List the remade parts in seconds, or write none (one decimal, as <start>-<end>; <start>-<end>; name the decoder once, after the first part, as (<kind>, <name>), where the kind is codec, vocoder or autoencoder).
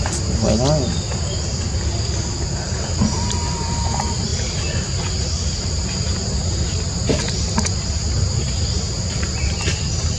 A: none